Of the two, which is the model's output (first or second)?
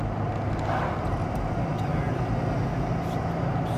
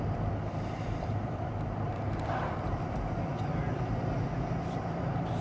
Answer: second